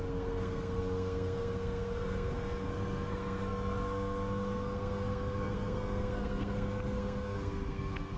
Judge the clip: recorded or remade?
remade